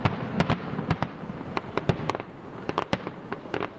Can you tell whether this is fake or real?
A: real